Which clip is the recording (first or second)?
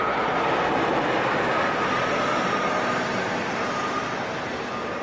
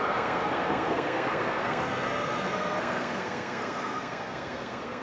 first